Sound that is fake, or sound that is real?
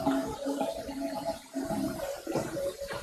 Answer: fake